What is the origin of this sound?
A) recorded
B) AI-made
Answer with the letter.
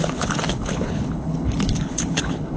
B